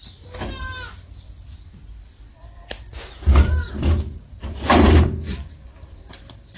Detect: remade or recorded recorded